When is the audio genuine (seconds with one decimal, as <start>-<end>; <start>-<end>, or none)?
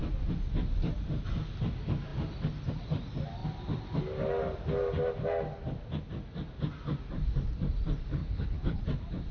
0.0-8.2; 8.8-9.3